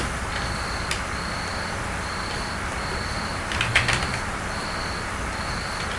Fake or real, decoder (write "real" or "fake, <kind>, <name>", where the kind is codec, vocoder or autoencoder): real